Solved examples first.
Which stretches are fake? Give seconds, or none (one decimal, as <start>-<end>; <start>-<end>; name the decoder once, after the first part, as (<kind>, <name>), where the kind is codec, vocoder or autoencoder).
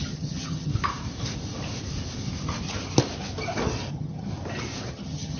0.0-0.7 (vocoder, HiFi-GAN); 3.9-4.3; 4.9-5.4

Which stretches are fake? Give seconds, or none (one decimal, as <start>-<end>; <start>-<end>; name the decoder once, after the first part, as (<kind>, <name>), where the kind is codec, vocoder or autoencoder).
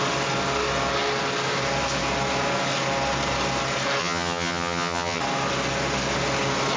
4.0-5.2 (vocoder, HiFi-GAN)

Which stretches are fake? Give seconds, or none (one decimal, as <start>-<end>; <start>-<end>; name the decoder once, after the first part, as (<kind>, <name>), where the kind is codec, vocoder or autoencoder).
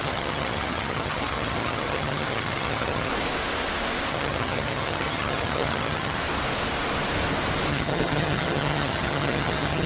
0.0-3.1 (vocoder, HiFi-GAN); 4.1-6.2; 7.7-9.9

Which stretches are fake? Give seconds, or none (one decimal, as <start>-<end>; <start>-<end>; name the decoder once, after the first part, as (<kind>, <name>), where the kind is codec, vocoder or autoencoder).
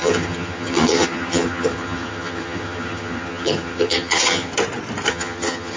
0.0-4.5 (vocoder, HiFi-GAN); 5.1-5.8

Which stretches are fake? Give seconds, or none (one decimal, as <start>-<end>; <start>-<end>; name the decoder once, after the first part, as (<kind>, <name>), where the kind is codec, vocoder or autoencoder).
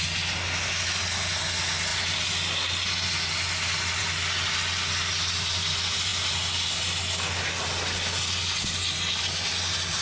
none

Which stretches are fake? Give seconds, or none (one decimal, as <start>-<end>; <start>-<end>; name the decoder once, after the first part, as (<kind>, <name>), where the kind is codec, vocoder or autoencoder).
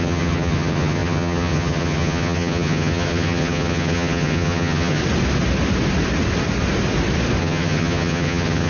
0.0-5.0 (vocoder, HiFi-GAN); 7.4-8.7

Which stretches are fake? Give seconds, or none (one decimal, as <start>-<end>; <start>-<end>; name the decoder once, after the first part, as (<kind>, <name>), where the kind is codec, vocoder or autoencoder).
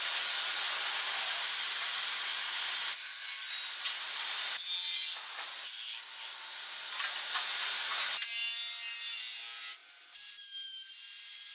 none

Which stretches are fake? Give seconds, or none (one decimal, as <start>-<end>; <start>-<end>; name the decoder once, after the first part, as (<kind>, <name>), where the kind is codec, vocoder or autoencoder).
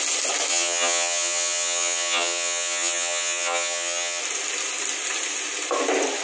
0.5-4.2 (vocoder, HiFi-GAN)